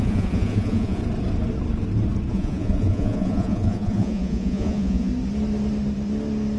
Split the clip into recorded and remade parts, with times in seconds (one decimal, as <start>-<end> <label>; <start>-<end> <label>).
0.0-1.0 remade; 1.0-2.3 recorded; 2.3-5.1 remade; 5.1-6.6 recorded